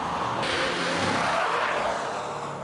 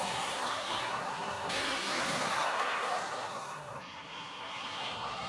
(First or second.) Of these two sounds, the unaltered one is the first